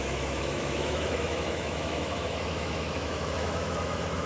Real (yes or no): no